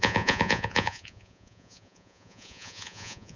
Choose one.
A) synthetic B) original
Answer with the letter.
A